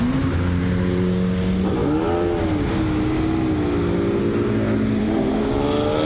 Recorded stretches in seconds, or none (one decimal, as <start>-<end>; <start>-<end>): 0.0-5.0; 5.5-6.0